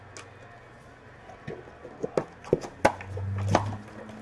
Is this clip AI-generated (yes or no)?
no